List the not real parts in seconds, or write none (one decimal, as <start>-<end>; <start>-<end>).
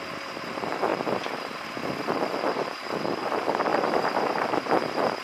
3.7-4.7